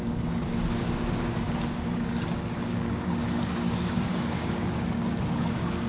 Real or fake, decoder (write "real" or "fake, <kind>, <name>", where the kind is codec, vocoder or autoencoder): fake, codec, DAC